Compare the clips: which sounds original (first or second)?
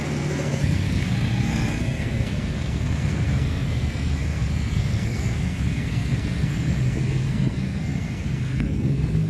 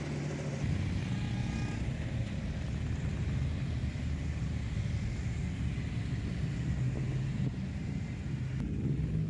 second